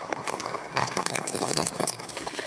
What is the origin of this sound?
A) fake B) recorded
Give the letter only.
A